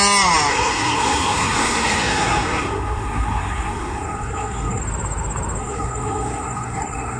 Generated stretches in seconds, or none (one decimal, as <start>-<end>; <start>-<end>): 0.5-4.8; 5.6-7.2